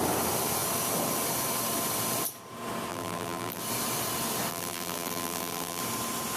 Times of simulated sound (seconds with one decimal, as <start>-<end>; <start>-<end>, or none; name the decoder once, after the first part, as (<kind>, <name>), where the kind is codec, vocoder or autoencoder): 2.9-3.6 (vocoder, BigVGAN v2); 4.5-5.8